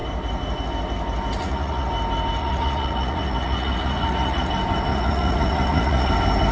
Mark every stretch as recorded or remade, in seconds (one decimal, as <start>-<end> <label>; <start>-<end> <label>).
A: 0.0-1.4 recorded; 1.4-1.9 remade; 1.9-2.4 recorded; 2.4-4.5 remade; 4.5-4.9 recorded; 4.9-6.1 remade; 6.1-6.5 recorded